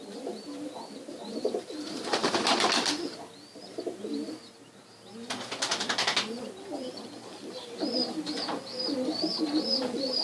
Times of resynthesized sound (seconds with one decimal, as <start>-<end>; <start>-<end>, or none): 0.0-4.1; 7.6-10.2